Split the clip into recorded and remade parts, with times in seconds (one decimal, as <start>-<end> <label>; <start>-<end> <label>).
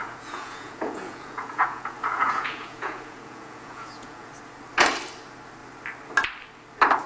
0.0-4.3 remade; 4.3-7.1 recorded